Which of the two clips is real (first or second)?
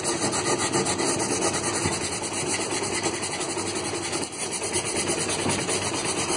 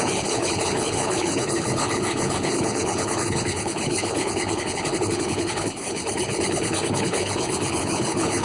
first